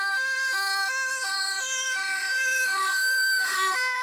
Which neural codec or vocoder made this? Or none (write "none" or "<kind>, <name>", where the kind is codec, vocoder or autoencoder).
autoencoder, DAC-VAE